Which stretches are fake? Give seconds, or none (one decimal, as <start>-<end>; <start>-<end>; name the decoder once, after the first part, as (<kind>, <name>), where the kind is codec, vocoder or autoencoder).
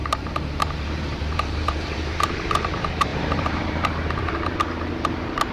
0.0-5.5 (vocoder, BigVGAN v2)